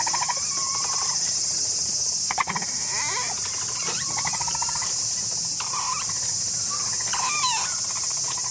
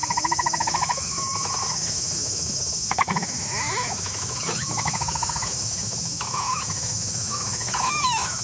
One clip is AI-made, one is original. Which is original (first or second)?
first